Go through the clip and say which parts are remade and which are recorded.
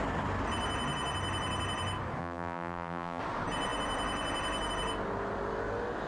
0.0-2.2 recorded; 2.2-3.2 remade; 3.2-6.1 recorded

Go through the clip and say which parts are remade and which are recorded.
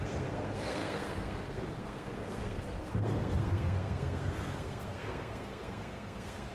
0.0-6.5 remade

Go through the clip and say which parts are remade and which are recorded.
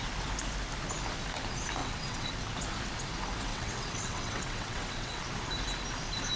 0.0-1.8 recorded; 1.8-2.3 remade; 2.3-3.5 recorded; 3.5-5.2 remade; 5.2-6.4 recorded